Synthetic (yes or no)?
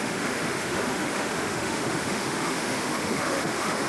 yes